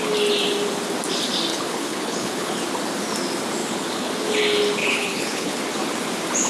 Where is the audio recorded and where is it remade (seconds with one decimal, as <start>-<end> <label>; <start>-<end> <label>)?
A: 0.0-1.5 recorded; 1.5-2.6 remade; 2.6-3.6 recorded; 3.6-4.1 remade; 4.1-4.8 recorded; 4.8-5.6 remade; 5.6-6.5 recorded